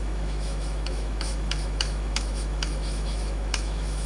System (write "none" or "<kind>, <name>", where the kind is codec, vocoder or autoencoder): autoencoder, DAC-VAE